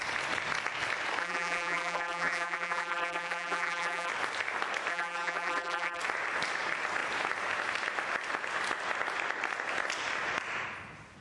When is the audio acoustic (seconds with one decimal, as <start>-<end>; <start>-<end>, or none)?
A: 0.0-1.2; 4.1-4.9; 6.0-11.2